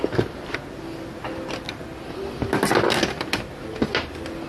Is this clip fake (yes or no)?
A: no